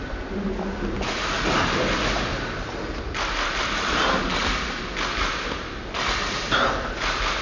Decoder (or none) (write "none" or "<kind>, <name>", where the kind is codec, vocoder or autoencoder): none